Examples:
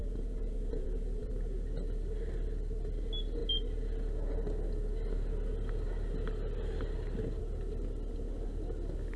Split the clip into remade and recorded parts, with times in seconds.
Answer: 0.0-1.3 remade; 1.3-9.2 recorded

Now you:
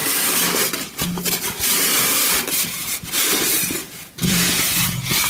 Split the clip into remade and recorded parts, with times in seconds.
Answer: 0.0-3.8 recorded; 3.8-5.3 remade

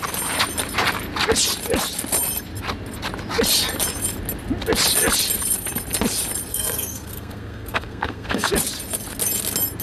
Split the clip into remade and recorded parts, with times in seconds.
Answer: 0.0-6.5 recorded; 6.5-8.5 remade; 8.5-9.8 recorded

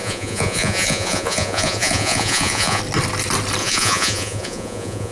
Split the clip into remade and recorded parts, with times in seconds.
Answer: 0.0-2.8 remade; 2.8-3.6 recorded; 3.6-5.1 remade

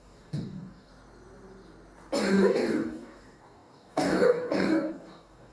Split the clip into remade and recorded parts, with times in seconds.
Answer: 0.0-0.9 remade; 0.9-2.3 recorded; 2.3-5.5 remade